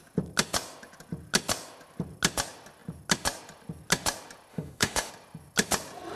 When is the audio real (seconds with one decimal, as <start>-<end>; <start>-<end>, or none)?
0.0-4.5; 5.1-6.2